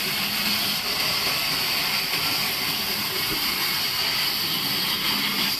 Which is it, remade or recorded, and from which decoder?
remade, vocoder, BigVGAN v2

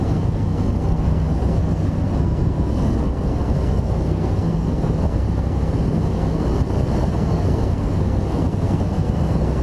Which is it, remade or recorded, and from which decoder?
remade, codec, SNAC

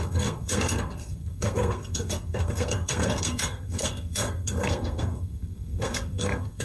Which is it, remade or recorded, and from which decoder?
remade, codec, SNAC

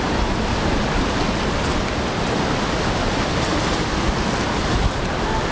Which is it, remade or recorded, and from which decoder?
recorded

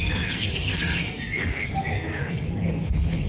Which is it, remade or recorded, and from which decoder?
remade, codec, SNAC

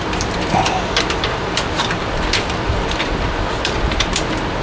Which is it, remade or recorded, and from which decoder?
remade, vocoder, BigVGAN v2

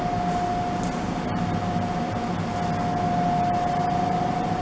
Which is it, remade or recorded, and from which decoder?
recorded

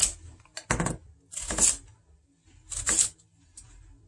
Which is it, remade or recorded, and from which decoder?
recorded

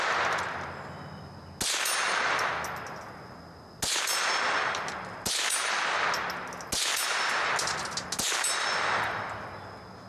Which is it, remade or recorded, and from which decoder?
recorded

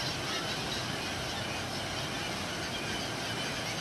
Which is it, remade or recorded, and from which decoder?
recorded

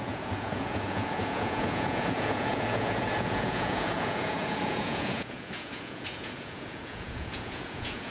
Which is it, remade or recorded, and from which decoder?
remade, vocoder, Vocos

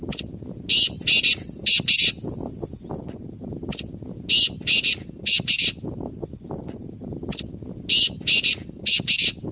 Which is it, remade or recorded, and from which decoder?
recorded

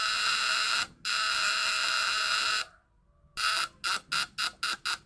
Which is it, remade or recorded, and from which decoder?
recorded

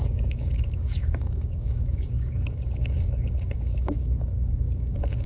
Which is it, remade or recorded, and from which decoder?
remade, codec, DAC